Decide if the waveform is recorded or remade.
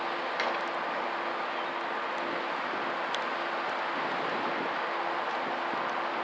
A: recorded